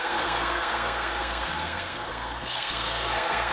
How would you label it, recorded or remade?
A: remade